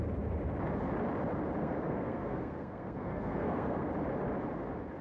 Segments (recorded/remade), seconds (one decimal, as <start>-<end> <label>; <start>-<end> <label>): 0.0-1.6 recorded; 1.6-3.9 remade; 3.9-5.0 recorded